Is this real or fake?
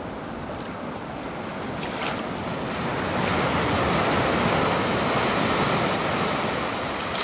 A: real